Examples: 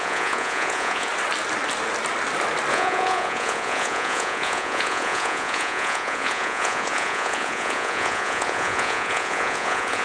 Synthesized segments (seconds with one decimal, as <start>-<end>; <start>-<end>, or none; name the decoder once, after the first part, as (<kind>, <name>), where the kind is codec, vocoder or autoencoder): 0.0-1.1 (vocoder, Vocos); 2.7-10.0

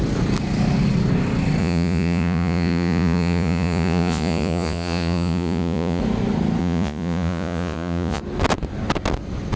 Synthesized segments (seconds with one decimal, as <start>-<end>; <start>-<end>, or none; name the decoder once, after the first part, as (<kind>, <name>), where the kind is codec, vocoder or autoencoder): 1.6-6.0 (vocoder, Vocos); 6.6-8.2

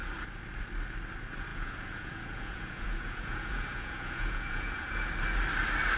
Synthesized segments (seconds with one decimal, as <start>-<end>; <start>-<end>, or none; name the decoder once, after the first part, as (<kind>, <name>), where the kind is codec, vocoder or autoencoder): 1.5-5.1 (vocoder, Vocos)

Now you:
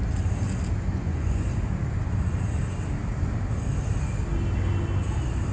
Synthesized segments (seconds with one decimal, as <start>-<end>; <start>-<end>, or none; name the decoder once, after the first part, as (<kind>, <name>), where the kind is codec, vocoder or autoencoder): 0.9-1.5 (vocoder, Vocos)

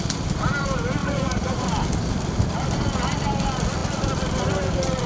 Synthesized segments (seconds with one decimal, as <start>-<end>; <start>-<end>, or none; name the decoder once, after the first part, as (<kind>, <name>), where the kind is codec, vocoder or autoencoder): 1.0-1.6 (vocoder, Vocos)

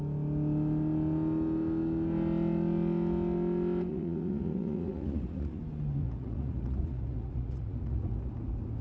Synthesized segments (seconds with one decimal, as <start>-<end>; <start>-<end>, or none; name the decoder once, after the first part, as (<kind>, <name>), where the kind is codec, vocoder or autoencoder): 3.9-5.6 (vocoder, Vocos); 6.0-8.3

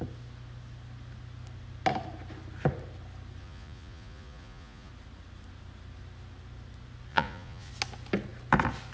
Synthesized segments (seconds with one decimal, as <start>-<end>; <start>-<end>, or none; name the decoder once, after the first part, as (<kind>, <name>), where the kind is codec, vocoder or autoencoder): 3.4-4.9 (vocoder, Vocos); 7.1-7.7

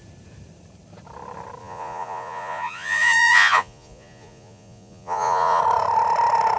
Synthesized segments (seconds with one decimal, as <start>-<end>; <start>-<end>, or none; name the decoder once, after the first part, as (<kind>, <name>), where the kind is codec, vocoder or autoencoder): 1.6-5.6 (vocoder, Vocos)